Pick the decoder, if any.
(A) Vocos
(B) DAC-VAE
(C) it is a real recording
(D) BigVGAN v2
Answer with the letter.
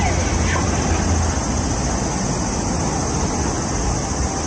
C